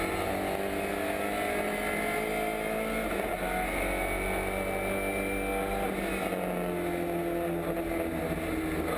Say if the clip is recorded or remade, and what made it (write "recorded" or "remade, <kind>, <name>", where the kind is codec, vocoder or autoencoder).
recorded